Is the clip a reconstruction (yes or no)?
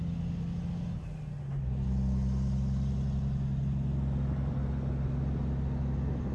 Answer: no